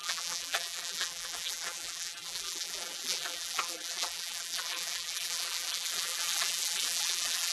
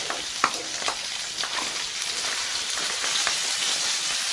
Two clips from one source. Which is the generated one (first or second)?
first